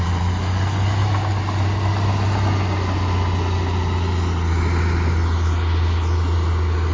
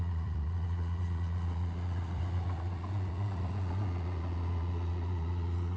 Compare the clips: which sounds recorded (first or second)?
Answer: first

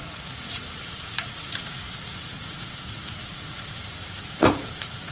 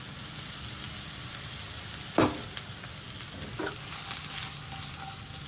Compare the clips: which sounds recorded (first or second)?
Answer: second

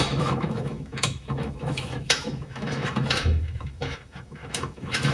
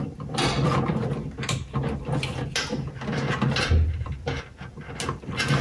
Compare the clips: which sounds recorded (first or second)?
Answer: second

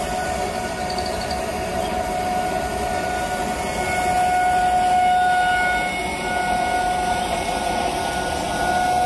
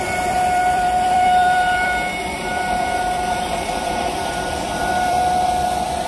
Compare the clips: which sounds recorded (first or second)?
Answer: first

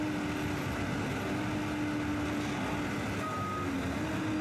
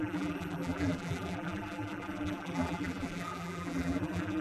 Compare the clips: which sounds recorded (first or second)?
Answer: first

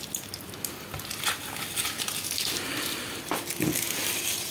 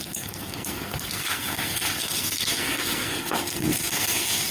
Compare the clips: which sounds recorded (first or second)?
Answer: first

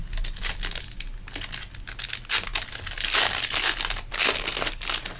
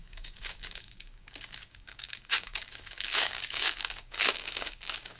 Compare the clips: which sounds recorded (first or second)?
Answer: first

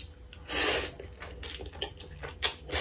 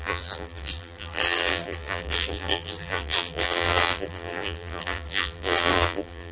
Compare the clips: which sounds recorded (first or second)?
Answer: first